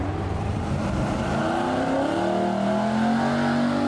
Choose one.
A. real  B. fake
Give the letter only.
A